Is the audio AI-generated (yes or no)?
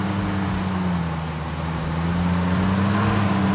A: no